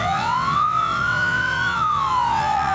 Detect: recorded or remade remade